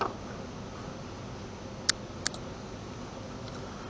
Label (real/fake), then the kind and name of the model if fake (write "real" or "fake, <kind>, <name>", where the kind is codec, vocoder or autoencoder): real